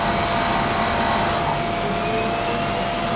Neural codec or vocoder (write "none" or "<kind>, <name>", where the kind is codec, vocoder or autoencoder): none